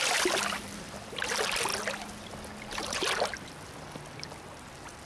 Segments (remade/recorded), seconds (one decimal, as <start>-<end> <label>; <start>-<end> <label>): 0.0-1.7 remade; 1.7-5.0 recorded